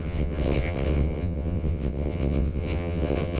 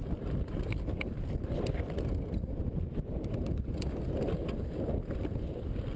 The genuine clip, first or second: second